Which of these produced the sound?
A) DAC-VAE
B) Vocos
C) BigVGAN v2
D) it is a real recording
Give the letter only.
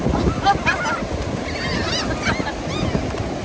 D